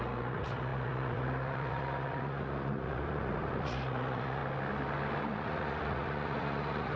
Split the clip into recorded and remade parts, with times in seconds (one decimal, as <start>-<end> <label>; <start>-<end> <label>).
0.0-4.4 remade; 4.4-5.2 recorded; 5.2-7.0 remade